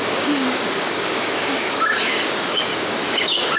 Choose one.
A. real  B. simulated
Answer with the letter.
B